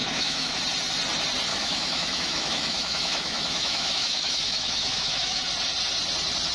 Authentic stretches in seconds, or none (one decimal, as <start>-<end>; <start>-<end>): 0.6-1.5; 5.4-6.5

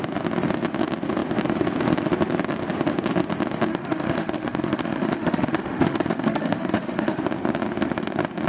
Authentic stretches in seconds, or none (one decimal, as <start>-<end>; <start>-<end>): 0.0-3.7; 7.2-8.5

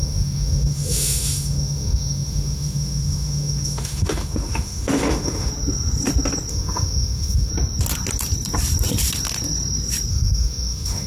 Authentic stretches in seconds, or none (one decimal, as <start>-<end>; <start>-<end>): 5.5-6.5; 7.5-10.1

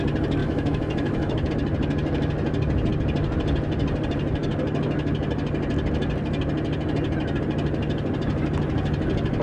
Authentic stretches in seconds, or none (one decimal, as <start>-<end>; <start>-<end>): 0.0-0.4; 1.5-9.4

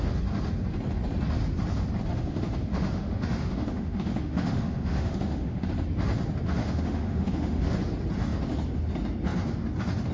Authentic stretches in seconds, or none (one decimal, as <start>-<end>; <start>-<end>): 0.0-2.1; 5.7-6.6; 7.6-10.1

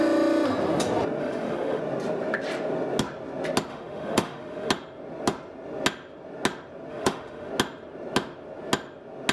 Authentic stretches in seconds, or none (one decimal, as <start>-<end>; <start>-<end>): 0.0-1.2; 1.8-3.7; 4.7-6.9; 7.5-9.3

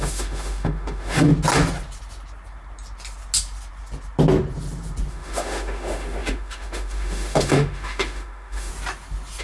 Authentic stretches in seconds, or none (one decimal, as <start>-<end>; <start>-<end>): 1.3-5.1; 8.7-9.4